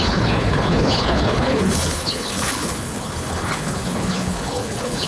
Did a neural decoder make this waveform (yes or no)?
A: yes